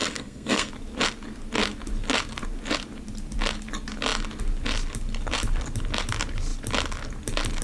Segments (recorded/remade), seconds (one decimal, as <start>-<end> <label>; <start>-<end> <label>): 0.0-0.7 remade; 0.7-7.6 recorded